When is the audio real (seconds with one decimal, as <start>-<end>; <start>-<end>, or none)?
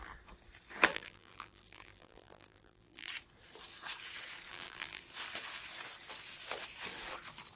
0.0-0.9; 3.1-4.5; 5.0-7.6